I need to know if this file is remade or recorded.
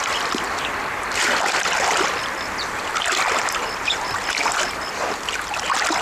recorded